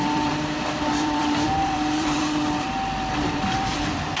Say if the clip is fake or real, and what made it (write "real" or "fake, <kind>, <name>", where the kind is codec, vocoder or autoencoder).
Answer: fake, vocoder, BigVGAN v2